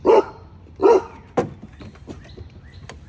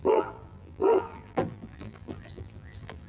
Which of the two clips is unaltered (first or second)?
first